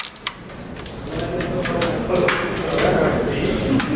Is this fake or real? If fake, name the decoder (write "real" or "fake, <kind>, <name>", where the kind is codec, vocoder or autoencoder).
real